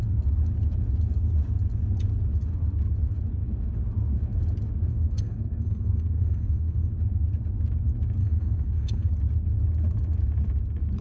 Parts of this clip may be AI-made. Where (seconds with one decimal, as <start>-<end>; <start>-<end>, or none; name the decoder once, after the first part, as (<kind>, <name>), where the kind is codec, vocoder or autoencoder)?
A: 4.9-6.9 (codec, SNAC); 8.2-9.1